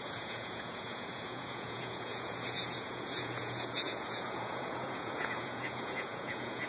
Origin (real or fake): fake